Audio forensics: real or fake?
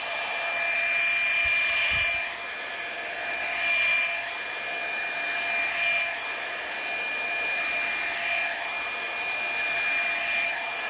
real